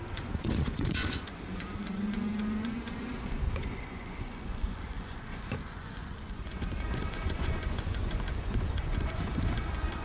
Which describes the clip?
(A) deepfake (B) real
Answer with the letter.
A